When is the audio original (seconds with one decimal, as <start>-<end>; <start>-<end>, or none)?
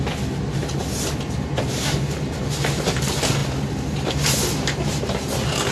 0.0-5.7